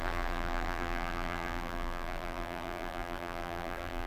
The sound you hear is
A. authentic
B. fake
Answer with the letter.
B